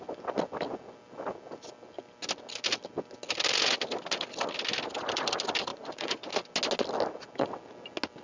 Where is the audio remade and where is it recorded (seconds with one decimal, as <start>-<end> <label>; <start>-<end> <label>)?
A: 0.0-5.7 recorded; 5.7-6.3 remade; 6.3-8.2 recorded